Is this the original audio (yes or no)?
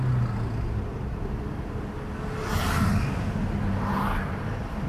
yes